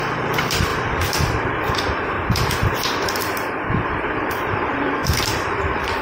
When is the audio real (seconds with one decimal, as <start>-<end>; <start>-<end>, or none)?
0.7-4.3